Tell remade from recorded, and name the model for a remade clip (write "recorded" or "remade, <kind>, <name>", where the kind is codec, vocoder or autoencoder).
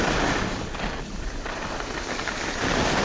recorded